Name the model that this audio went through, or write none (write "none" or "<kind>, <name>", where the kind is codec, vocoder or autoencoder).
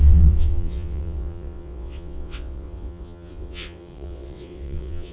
vocoder, WaveNeXt